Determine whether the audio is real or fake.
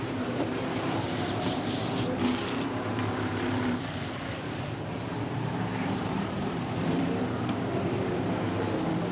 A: fake